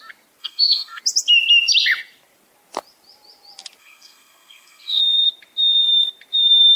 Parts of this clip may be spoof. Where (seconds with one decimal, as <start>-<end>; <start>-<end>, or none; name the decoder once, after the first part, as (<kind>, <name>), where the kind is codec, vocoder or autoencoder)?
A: 0.4-1.0 (codec, SNAC); 3.8-5.0